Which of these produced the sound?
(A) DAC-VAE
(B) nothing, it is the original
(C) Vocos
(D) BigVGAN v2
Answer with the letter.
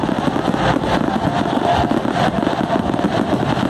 B